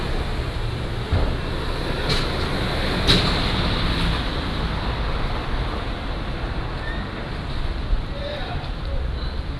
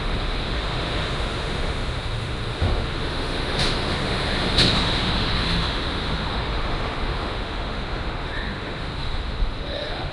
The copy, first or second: second